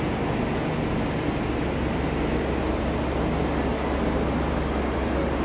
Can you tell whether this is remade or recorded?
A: recorded